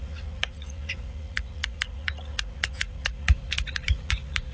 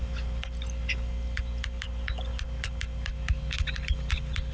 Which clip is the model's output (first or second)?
first